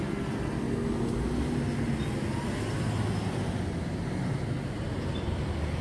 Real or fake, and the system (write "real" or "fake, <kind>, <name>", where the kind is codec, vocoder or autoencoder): real